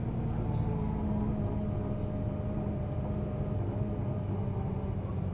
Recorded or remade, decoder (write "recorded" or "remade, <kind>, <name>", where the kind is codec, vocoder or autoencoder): recorded